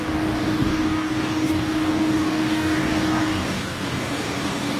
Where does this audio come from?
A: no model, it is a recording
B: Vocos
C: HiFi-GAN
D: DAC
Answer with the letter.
D